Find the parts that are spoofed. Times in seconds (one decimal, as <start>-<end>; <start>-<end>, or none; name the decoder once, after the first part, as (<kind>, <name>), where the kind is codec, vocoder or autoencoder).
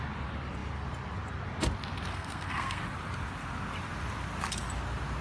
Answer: 2.1-2.8 (codec, SNAC)